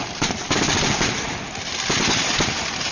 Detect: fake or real fake